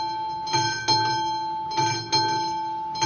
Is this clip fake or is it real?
real